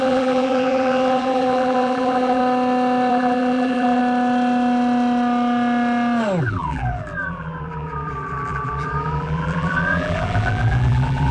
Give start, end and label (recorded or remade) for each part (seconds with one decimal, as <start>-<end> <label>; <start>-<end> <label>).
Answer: 0.0-2.4 remade; 2.4-3.1 recorded; 3.1-4.0 remade; 4.0-6.4 recorded; 6.4-11.3 remade